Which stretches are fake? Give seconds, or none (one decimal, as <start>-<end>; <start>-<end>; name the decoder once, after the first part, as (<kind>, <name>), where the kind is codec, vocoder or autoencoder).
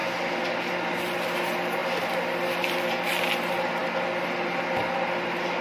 0.7-1.8 (vocoder, BigVGAN v2); 3.1-5.6